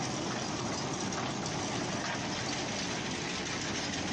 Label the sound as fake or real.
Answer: real